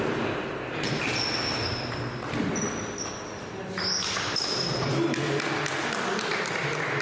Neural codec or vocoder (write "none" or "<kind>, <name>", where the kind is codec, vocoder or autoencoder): none